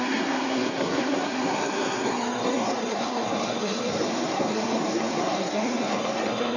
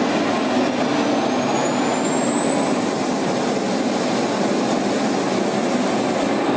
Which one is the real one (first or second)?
second